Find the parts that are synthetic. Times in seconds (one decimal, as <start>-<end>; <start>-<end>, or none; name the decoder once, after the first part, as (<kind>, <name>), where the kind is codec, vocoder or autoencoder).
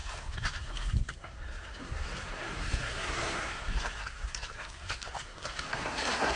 0.0-6.4 (codec, SNAC)